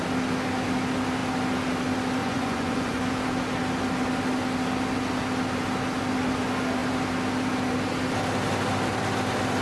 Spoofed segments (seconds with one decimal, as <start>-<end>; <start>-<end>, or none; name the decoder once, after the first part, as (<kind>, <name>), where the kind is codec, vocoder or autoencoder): 2.2-3.0 (vocoder, Vocos)